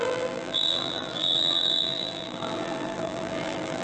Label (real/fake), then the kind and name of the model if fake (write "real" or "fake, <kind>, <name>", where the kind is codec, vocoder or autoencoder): fake, vocoder, BigVGAN v2